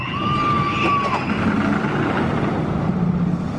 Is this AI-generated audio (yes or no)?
no